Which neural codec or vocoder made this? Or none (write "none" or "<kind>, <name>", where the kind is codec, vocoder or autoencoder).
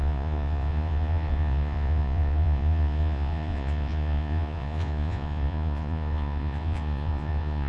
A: vocoder, Vocos